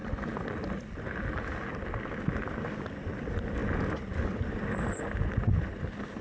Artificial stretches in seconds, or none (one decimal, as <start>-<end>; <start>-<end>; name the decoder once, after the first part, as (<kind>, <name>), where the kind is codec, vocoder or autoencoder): none